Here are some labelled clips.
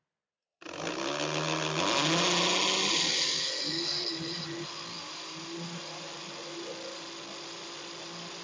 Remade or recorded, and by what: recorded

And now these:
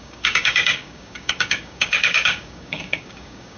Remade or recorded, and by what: remade, codec, DAC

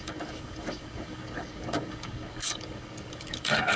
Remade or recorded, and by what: remade, codec, DAC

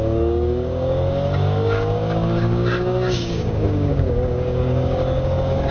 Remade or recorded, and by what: remade, codec, DAC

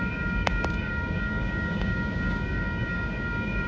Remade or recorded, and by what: remade, codec, DAC